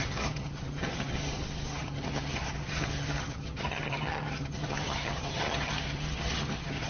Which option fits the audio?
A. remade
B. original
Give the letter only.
A